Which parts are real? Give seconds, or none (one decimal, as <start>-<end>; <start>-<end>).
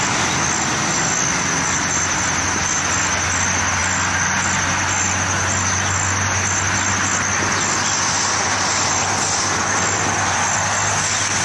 0.0-11.4